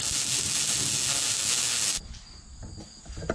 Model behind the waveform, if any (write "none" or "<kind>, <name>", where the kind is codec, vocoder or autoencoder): none